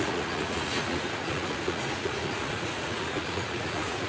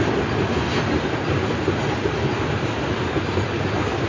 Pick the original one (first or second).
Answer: second